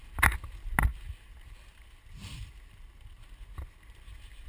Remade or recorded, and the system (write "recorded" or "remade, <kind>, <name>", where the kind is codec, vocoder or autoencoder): recorded